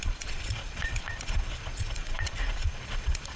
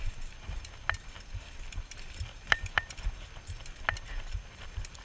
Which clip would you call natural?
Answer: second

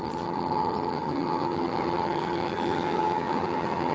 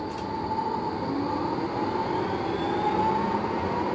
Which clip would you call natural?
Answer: second